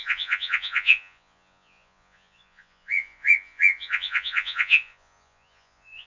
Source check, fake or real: fake